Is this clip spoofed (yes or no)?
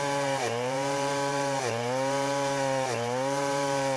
yes